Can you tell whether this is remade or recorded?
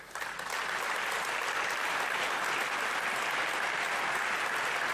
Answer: recorded